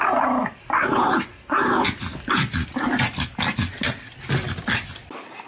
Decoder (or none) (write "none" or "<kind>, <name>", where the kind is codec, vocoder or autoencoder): none